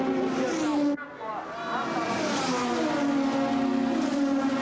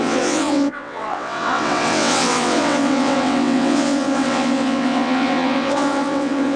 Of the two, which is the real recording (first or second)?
first